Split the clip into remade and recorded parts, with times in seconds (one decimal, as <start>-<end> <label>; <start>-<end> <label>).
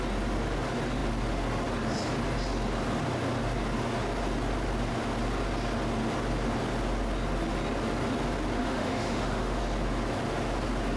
0.0-8.6 recorded; 8.6-9.6 remade; 9.6-11.0 recorded